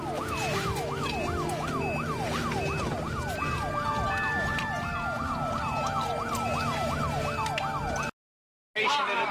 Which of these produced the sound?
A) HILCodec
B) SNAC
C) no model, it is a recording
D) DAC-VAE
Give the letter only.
C